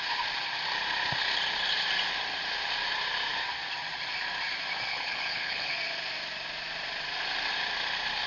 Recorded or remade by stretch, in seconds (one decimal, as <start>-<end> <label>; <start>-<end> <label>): 0.0-4.9 recorded; 4.9-5.7 remade; 5.7-8.3 recorded